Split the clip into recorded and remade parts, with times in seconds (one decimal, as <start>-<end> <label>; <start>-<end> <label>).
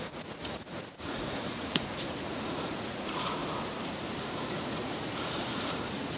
0.0-3.4 remade; 3.4-4.2 recorded; 4.2-6.2 remade